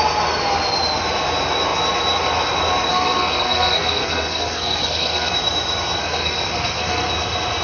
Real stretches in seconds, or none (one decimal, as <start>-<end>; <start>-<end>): 0.0-2.9; 5.3-6.0; 7.1-7.6